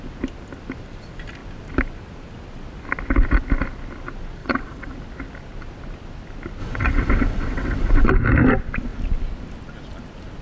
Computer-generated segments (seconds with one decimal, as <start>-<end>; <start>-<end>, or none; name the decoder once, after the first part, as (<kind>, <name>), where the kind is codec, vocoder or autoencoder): 4.4-4.9 (vocoder, WaveNeXt); 6.6-8.1